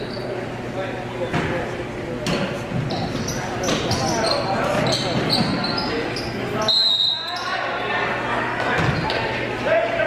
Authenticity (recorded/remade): recorded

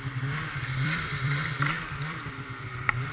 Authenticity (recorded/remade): remade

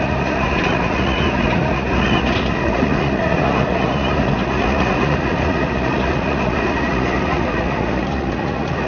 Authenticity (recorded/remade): remade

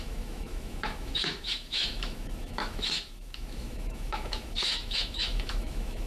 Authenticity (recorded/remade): remade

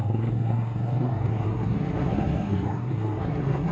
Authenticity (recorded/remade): remade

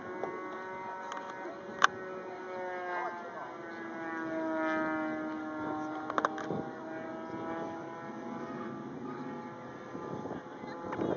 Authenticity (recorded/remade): recorded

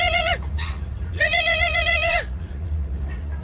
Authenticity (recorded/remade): remade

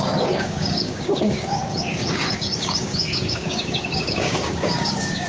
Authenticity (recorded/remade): remade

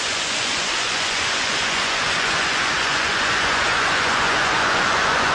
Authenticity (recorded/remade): remade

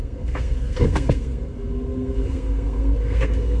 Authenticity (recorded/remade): remade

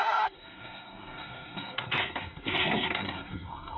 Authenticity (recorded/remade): remade